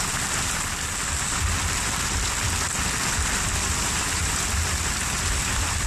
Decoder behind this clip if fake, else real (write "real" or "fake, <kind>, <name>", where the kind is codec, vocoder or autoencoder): real